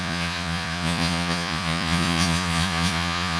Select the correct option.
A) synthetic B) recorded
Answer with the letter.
A